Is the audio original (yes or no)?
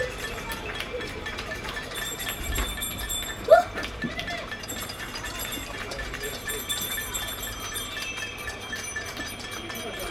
no